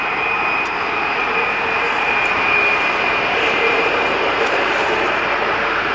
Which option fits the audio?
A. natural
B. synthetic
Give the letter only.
B